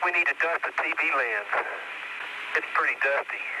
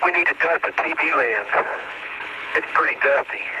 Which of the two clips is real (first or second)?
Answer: first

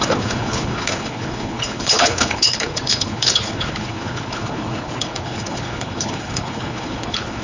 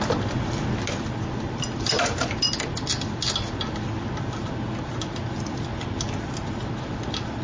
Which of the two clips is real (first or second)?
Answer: second